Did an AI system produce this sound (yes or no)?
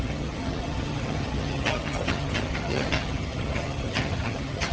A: yes